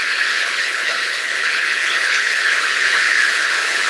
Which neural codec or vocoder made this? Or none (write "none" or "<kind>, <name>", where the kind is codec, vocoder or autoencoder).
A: codec, HILCodec